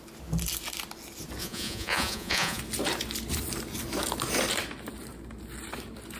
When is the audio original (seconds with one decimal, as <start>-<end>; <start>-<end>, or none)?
0.0-1.4; 2.6-6.2